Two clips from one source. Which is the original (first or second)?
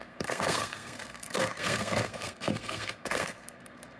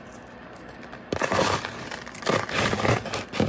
second